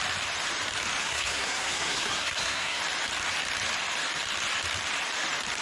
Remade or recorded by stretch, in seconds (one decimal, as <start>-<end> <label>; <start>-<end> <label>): 0.0-1.0 recorded; 1.0-2.8 remade; 2.8-5.6 recorded